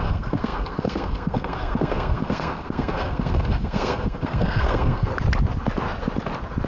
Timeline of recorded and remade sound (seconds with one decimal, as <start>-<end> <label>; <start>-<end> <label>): 0.0-5.1 remade; 5.1-6.7 recorded